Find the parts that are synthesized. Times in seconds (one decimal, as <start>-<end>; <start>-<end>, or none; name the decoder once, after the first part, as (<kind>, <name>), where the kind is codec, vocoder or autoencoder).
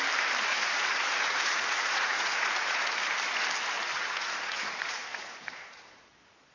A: 0.5-2.8 (vocoder, Vocos); 3.9-6.5